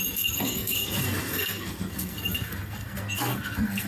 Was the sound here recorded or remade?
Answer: remade